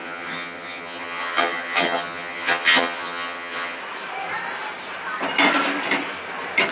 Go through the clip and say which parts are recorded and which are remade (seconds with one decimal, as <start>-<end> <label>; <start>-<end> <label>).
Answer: 0.0-3.8 remade; 3.8-6.7 recorded